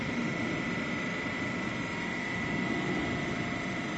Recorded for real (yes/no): yes